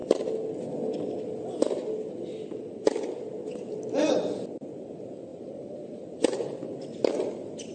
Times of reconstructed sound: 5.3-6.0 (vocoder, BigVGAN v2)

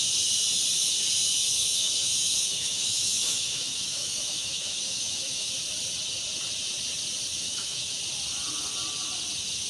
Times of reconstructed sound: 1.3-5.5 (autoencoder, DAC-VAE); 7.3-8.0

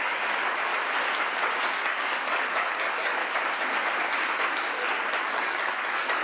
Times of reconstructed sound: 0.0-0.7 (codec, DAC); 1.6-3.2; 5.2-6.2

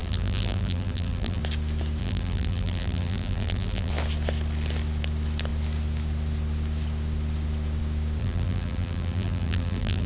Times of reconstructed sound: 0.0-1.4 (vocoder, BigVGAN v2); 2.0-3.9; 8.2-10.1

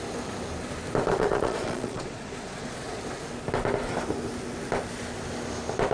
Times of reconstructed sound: 1.1-3.0 (vocoder, Vocos)